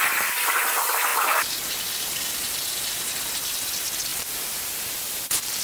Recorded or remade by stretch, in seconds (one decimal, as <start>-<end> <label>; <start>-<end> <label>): 0.0-1.1 recorded; 1.1-1.7 remade; 1.7-4.1 recorded; 4.1-4.9 remade; 4.9-5.6 recorded